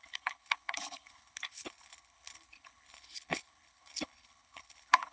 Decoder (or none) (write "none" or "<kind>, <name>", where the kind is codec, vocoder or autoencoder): codec, HILCodec